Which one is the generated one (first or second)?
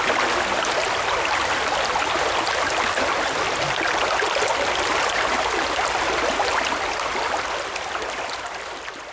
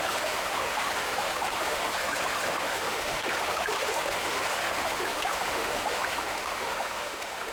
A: second